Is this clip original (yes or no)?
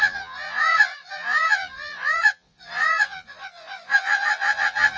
no